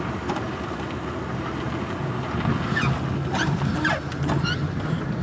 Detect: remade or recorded recorded